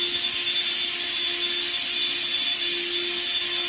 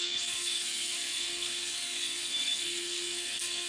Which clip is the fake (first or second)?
second